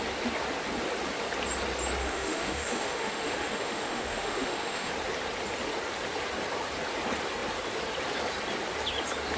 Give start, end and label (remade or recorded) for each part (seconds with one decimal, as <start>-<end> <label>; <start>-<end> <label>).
0.0-2.0 recorded; 2.0-4.9 remade; 4.9-9.4 recorded

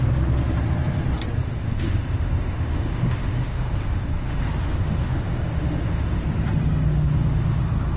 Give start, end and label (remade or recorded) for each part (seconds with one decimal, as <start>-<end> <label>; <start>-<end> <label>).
0.0-1.4 recorded; 1.4-6.2 remade; 6.2-6.9 recorded; 6.9-7.6 remade; 7.6-8.0 recorded

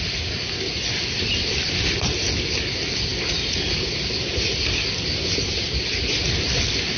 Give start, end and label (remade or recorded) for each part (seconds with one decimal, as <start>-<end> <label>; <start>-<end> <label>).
0.0-7.0 recorded

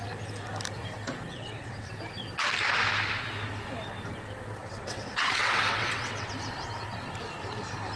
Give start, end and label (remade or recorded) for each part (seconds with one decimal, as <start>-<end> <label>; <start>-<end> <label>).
0.0-1.3 recorded; 1.3-1.9 remade; 1.9-4.6 recorded; 4.6-6.3 remade; 6.3-8.0 recorded

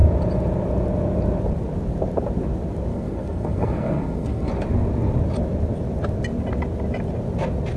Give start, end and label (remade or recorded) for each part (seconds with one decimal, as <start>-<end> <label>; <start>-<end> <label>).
0.0-2.9 recorded; 2.9-4.5 remade; 4.5-7.8 recorded

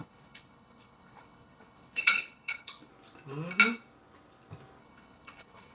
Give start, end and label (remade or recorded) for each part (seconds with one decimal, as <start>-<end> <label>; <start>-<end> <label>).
0.0-2.9 remade; 2.9-4.8 recorded; 4.8-5.7 remade

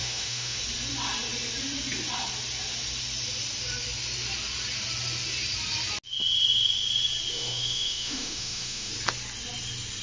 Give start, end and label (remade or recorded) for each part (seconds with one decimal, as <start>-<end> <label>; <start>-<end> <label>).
0.0-0.6 remade; 0.6-7.3 recorded; 7.3-8.9 remade; 8.9-10.0 recorded